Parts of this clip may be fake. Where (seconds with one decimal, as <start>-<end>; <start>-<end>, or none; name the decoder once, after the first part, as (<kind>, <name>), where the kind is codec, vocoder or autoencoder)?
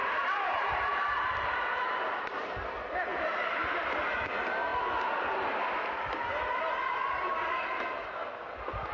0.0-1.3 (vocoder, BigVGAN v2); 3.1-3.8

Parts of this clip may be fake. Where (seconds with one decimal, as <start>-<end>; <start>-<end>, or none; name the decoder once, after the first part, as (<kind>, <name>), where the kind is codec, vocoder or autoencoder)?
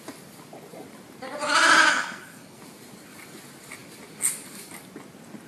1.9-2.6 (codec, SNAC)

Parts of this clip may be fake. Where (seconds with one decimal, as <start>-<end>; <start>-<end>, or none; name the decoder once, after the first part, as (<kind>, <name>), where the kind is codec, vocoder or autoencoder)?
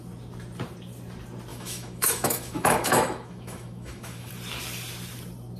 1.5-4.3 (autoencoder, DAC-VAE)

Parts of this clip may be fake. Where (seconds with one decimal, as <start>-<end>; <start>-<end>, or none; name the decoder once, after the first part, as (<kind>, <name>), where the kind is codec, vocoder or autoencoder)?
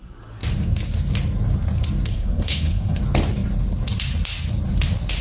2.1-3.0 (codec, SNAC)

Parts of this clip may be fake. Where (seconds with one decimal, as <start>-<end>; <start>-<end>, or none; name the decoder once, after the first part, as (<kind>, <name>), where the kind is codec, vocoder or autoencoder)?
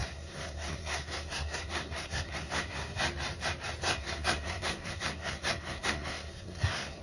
0.0-3.0 (codec, SNAC); 3.8-7.0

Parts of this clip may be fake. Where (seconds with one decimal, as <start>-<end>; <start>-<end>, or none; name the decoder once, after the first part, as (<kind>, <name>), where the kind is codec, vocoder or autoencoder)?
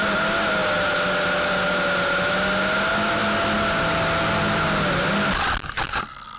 none